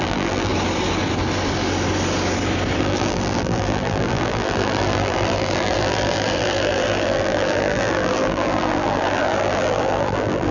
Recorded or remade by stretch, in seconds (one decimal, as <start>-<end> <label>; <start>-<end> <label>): 0.0-0.5 remade; 0.5-2.8 recorded; 2.8-10.5 remade